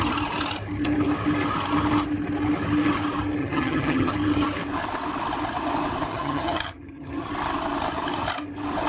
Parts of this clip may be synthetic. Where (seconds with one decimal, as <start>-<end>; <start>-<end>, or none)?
3.4-4.1; 6.1-7.3